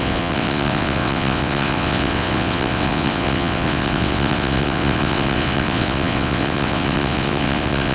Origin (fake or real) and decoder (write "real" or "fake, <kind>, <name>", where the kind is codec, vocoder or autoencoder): fake, vocoder, WaveNeXt